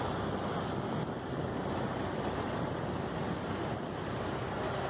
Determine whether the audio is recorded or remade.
recorded